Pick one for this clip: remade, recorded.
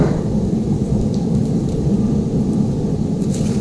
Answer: remade